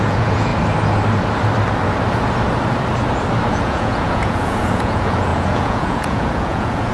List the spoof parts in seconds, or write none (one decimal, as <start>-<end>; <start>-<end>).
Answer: 0.0-0.5; 3.5-6.9

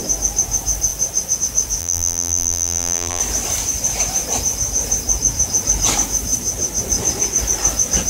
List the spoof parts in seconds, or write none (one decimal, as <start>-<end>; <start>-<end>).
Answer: 1.8-3.2

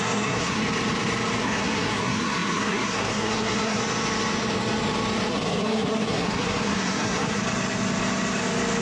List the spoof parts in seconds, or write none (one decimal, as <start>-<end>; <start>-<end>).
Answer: 0.0-0.6; 1.4-3.8; 5.3-7.4

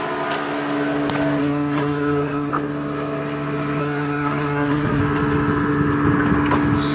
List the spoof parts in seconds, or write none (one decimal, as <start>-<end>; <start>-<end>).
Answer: 1.4-2.5; 3.8-5.0

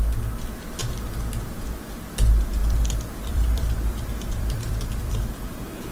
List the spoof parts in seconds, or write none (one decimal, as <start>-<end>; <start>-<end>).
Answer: 2.6-5.2

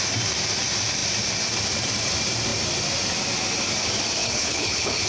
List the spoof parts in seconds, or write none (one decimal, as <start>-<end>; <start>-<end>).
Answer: 4.2-5.1

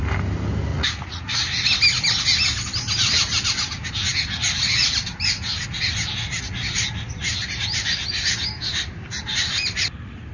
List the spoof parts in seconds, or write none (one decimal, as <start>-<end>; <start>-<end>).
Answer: 0.7-1.3